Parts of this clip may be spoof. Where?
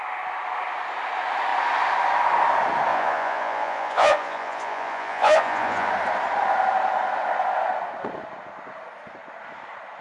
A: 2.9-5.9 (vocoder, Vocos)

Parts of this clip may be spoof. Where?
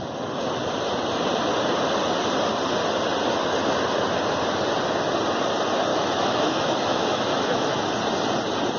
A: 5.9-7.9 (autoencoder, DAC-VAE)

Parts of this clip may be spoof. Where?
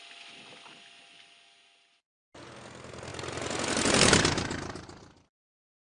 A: none